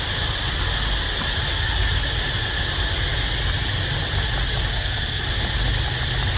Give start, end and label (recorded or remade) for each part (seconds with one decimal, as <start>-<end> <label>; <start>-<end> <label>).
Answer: 0.0-4.7 recorded; 4.7-5.2 remade; 5.2-6.4 recorded